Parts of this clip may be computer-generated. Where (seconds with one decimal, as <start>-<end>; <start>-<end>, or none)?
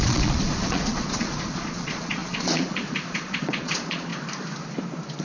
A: 0.0-4.1